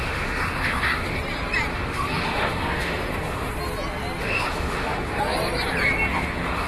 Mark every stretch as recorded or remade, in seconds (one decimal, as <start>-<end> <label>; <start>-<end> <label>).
0.0-1.2 remade; 1.2-1.7 recorded; 1.7-3.5 remade; 3.5-4.2 recorded; 4.2-5.2 remade; 5.2-6.1 recorded; 6.1-6.7 remade